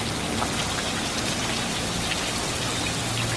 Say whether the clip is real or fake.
real